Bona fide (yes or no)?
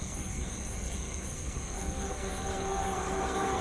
no